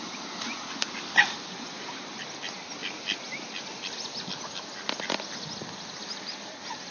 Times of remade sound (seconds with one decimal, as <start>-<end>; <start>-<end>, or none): 1.2-2.2; 6.0-6.9

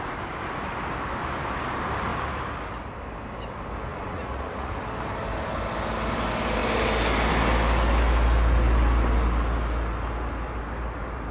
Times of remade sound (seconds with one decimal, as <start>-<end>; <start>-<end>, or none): 3.9-4.7

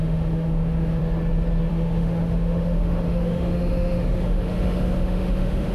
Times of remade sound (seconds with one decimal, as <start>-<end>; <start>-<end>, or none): 0.0-1.0; 1.7-5.7